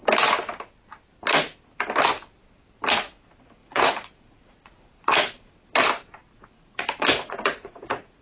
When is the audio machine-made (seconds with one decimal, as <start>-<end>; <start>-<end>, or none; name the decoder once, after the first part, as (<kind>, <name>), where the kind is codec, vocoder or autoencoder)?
3.6-5.6 (vocoder, Vocos); 6.4-8.2